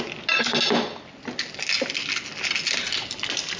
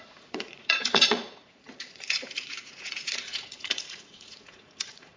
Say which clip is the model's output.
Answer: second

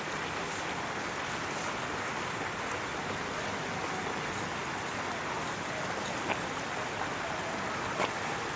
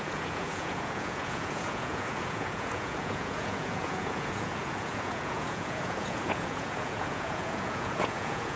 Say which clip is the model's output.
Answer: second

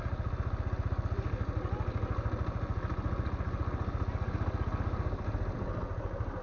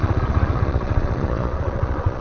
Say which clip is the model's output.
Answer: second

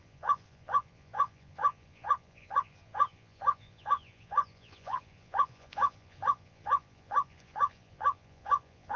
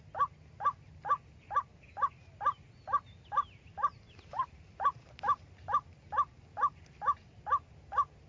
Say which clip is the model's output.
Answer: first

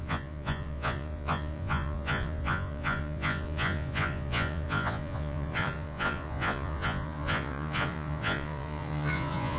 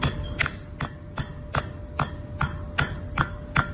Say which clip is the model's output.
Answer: first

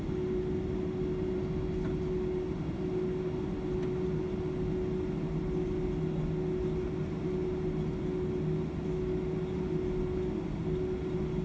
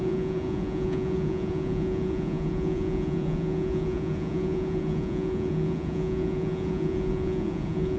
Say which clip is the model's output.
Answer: second